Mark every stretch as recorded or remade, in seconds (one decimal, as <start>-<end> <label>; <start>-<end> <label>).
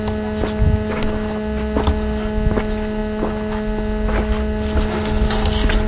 0.0-5.9 recorded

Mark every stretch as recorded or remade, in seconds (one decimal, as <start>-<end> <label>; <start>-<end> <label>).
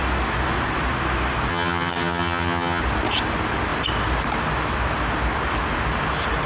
0.0-1.5 recorded; 1.5-2.8 remade; 2.8-6.5 recorded